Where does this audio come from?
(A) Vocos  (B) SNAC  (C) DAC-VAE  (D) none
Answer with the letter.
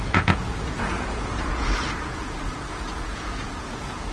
A